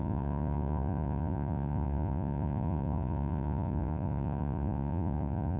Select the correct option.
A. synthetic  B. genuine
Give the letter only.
A